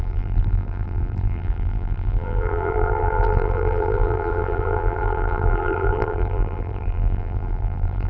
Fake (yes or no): yes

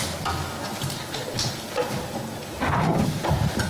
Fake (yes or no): no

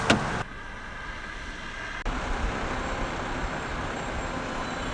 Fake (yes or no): no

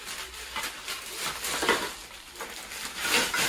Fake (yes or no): no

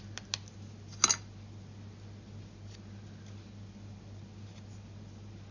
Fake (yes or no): no